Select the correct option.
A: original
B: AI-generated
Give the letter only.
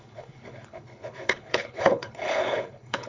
B